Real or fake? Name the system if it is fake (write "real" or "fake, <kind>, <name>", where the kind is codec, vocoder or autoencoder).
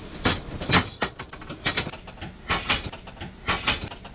real